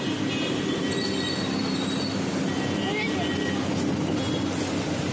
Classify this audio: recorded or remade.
recorded